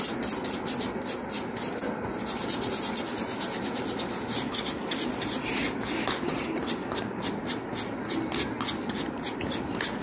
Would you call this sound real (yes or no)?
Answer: yes